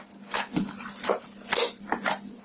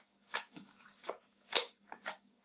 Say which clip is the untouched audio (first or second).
first